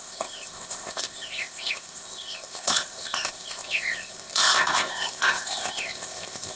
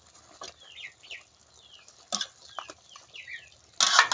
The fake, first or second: first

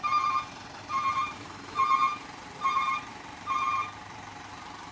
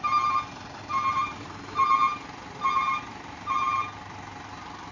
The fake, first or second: first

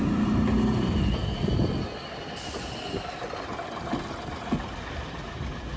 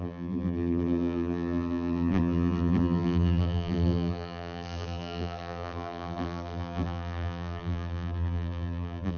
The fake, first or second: second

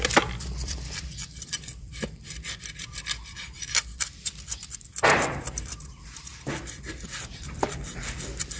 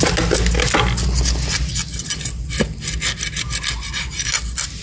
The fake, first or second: first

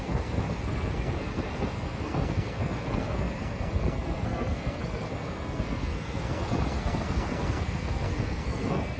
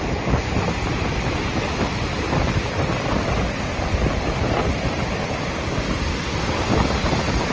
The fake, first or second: first